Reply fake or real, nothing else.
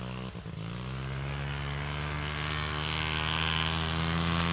real